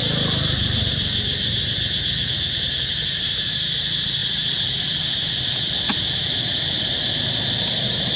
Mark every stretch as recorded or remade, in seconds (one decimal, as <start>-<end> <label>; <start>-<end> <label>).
0.0-4.2 recorded; 4.2-5.0 remade; 5.0-8.2 recorded